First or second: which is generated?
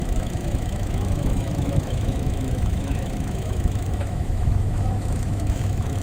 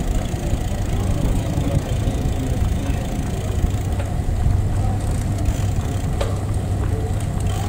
first